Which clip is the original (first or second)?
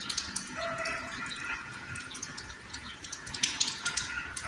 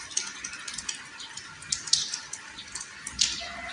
second